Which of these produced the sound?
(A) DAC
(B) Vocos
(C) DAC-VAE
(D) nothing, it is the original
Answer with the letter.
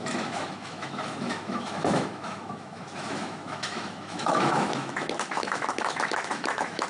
C